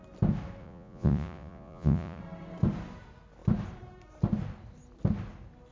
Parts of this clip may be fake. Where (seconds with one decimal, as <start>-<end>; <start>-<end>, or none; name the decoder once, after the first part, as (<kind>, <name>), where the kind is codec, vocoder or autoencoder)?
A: 0.6-2.2 (vocoder, Vocos)